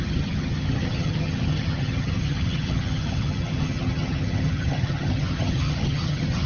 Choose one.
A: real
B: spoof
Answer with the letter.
B